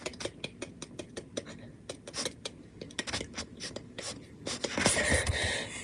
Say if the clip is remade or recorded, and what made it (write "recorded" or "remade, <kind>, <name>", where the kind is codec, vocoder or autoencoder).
recorded